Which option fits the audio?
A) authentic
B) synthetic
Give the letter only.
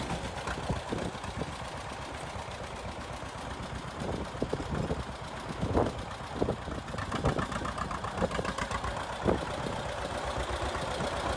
A